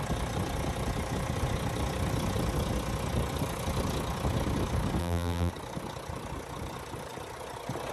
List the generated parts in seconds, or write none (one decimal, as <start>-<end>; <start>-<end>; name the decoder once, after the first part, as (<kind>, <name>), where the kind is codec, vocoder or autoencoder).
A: 5.0-5.5 (vocoder, BigVGAN v2)